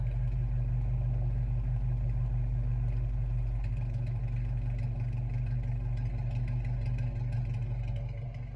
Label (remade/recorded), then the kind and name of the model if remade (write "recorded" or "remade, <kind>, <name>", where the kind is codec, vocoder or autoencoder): recorded